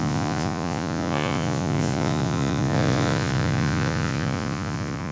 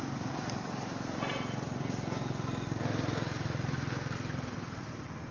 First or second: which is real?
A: second